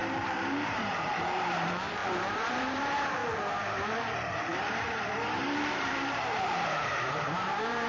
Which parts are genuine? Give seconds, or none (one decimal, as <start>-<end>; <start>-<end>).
3.2-3.8